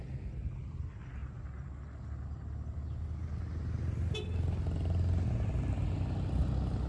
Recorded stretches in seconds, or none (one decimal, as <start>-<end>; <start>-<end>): 0.0-6.9